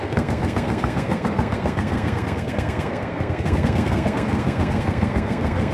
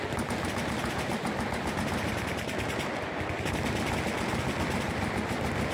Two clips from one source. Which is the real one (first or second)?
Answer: second